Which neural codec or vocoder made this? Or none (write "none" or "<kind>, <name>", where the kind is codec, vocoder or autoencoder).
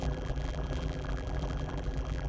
vocoder, BigVGAN v2